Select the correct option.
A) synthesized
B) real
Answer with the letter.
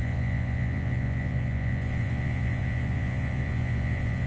A